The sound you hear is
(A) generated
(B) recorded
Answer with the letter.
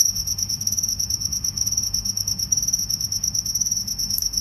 A